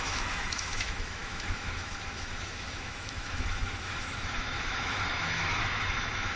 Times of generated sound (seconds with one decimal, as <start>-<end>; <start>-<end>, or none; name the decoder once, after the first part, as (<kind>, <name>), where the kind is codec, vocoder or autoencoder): 0.0-6.4 (autoencoder, DAC-VAE)